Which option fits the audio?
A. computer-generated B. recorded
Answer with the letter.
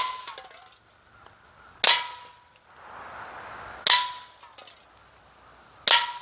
B